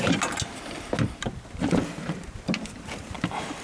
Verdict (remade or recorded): recorded